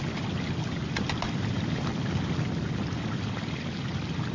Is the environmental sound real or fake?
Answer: real